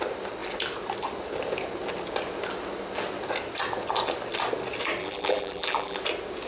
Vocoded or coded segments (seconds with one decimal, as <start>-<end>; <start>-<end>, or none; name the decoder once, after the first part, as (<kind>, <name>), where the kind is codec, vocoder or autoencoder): 5.0-6.0 (vocoder, BigVGAN v2)